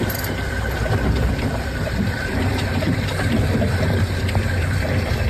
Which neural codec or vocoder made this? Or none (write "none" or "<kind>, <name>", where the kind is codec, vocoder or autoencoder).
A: vocoder, BigVGAN v2